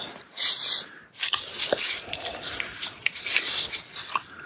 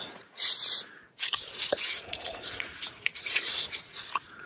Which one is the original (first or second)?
first